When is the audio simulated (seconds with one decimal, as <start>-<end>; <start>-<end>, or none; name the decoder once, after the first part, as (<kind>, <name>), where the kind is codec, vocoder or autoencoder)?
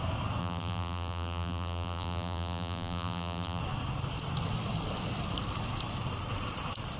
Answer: 0.4-3.6 (vocoder, BigVGAN v2)